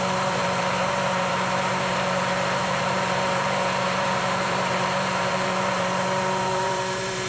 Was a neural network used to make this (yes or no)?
yes